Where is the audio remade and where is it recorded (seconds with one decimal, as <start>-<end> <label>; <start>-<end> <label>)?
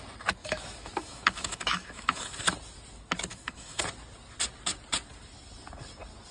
0.0-0.4 recorded; 0.4-2.4 remade; 2.4-3.3 recorded; 3.3-3.8 remade; 3.8-6.3 recorded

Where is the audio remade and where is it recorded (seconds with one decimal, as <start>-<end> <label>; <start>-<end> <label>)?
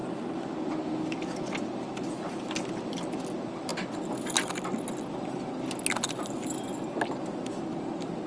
0.0-8.3 recorded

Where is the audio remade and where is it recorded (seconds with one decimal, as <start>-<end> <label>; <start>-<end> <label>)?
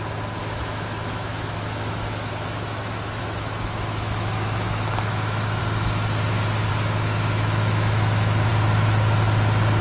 0.0-0.4 recorded; 0.4-5.6 remade; 5.6-6.7 recorded; 6.7-8.5 remade; 8.5-9.8 recorded